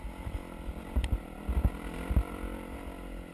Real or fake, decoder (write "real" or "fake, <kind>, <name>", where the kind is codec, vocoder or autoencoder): real